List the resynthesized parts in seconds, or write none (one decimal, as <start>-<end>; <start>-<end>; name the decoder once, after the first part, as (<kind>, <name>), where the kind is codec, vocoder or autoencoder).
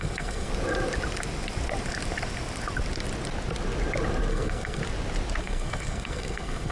0.0-0.5 (codec, SNAC); 4.3-4.8; 5.4-6.7